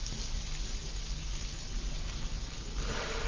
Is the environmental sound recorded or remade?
recorded